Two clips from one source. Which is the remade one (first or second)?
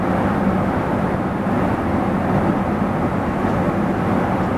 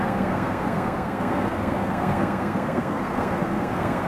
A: second